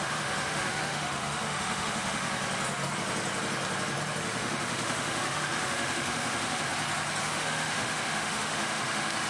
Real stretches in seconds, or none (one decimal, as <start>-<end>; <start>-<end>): 2.4-4.2; 6.7-7.2